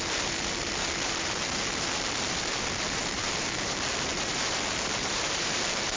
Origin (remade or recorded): remade